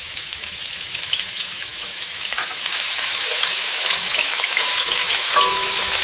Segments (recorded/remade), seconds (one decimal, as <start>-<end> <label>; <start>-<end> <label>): 0.0-6.0 remade